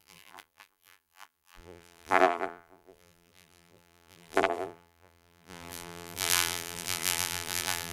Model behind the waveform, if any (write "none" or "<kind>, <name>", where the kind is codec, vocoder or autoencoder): vocoder, BigVGAN v2